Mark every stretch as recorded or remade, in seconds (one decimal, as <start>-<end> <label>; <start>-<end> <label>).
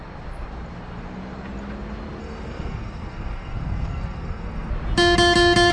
0.0-2.2 recorded; 2.2-4.7 remade; 4.7-5.7 recorded